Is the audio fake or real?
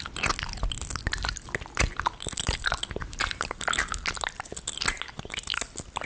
real